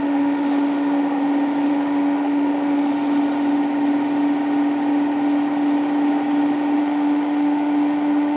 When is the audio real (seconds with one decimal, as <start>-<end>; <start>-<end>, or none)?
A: 1.2-1.7; 2.9-6.8